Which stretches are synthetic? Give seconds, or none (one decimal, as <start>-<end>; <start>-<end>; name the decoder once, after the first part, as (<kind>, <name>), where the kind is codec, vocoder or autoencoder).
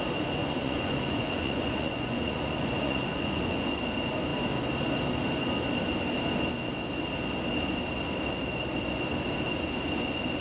0.4-3.8 (vocoder, Vocos)